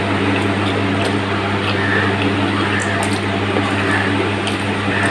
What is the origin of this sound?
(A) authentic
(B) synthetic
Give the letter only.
A